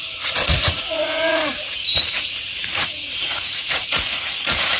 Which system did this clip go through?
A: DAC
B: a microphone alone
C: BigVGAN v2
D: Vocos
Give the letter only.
D